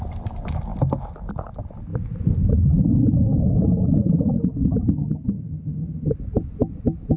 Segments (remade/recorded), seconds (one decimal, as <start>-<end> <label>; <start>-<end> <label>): 0.0-4.9 recorded; 4.9-6.1 remade; 6.1-7.2 recorded